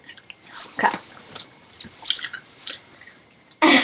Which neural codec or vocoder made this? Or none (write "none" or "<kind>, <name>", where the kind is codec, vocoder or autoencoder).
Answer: none